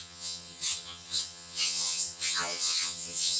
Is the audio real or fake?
fake